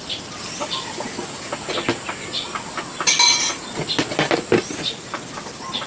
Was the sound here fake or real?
real